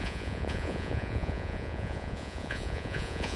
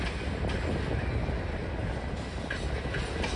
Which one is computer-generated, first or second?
first